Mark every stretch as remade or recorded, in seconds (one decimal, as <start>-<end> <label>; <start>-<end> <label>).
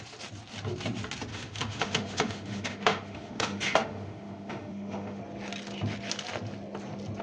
0.0-1.3 recorded; 1.3-5.2 remade; 5.2-7.2 recorded